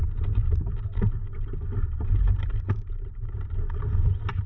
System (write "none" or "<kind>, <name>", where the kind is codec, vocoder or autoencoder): none